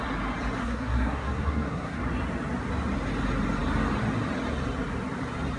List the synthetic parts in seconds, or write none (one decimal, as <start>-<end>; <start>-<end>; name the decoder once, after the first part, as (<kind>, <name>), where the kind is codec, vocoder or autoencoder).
0.6-2.0 (codec, SNAC)